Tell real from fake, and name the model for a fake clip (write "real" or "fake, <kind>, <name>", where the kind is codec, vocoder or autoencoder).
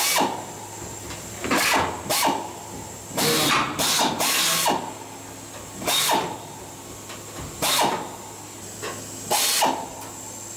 real